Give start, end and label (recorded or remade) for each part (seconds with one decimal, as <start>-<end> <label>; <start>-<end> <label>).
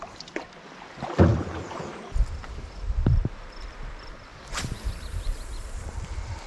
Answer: 0.0-6.5 recorded